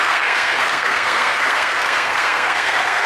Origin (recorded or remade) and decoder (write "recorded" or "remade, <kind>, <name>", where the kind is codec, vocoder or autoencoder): remade, codec, SNAC